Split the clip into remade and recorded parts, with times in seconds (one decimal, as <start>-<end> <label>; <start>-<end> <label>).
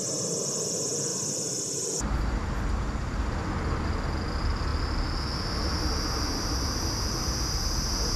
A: 0.0-1.1 recorded; 1.1-3.5 remade; 3.5-8.2 recorded